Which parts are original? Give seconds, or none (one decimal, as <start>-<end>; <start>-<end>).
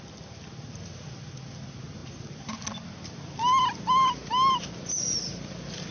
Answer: 0.0-5.9